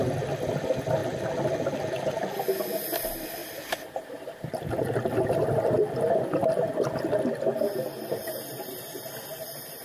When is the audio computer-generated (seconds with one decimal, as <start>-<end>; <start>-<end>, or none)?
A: 3.4-4.8; 8.2-9.1